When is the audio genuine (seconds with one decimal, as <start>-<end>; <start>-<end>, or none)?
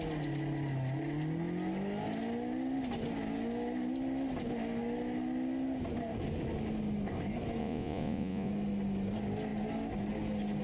0.0-7.6; 8.5-10.6